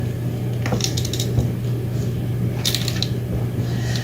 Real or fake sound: real